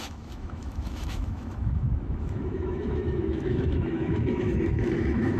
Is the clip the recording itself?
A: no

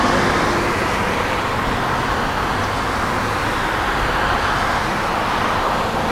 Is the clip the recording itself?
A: yes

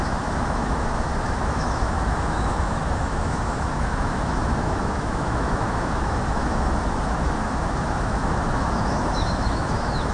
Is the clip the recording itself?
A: no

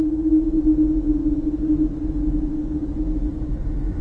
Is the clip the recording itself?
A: yes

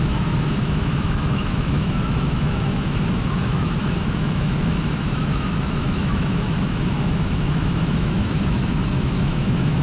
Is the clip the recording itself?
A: no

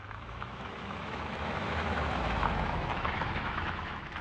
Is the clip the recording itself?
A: no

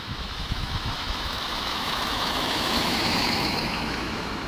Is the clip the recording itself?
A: no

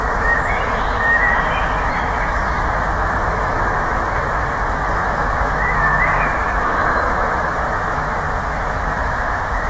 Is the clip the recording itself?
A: no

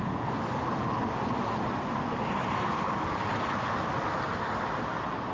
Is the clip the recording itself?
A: yes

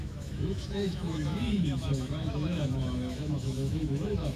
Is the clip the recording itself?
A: no